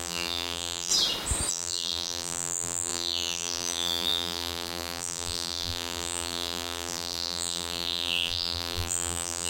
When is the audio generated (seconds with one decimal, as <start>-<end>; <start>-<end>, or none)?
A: 0.0-0.9; 1.5-9.5